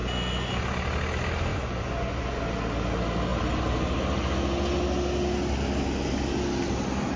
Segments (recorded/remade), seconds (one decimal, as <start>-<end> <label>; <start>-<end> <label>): 0.0-1.5 recorded; 1.5-2.4 remade; 2.4-7.2 recorded